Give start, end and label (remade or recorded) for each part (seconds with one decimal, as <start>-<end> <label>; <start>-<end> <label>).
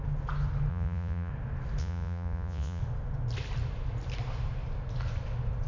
0.0-0.7 recorded; 0.7-1.3 remade; 1.3-1.8 recorded; 1.8-2.8 remade; 2.8-5.7 recorded